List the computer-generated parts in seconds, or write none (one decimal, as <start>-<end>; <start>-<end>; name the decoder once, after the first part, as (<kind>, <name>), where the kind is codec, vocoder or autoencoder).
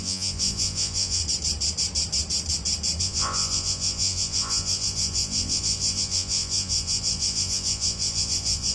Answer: 0.0-1.2 (vocoder, Vocos); 3.0-8.7